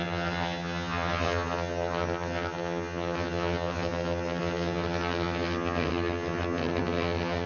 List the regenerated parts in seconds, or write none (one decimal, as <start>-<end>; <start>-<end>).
0.0-7.5